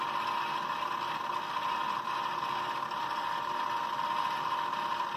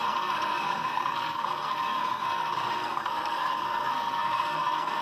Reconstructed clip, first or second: second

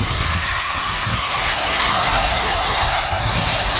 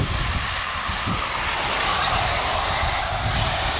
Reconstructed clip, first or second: first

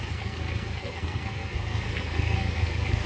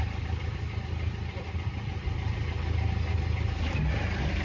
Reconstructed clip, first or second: first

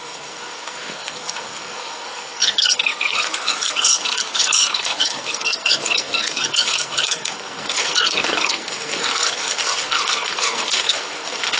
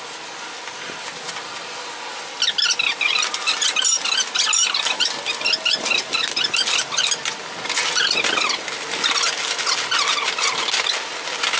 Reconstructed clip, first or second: first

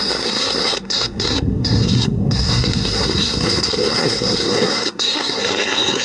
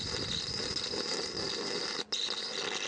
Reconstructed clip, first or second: first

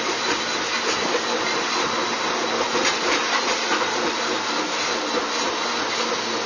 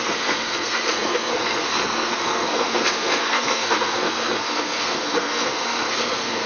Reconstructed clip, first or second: second